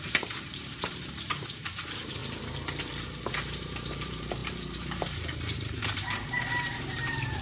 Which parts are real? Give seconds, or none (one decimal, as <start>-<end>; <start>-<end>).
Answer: 2.2-3.3